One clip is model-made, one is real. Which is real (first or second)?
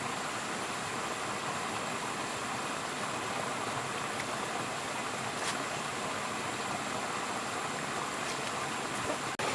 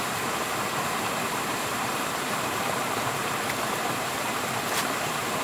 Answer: first